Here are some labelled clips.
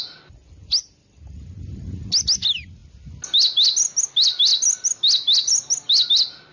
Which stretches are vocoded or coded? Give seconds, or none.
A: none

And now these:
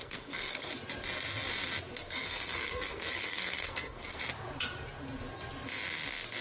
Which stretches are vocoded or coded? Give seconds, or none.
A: 0.0-0.7 (codec, SNAC); 2.0-4.2

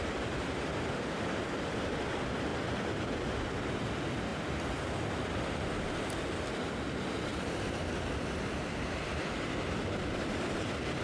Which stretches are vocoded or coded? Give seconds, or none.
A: none

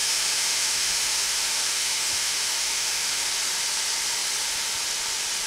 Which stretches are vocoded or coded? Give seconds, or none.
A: 0.0-3.3 (autoencoder, DAC-VAE)